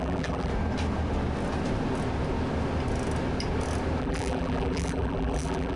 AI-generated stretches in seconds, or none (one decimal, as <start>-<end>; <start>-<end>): 0.0-0.5; 4.0-5.8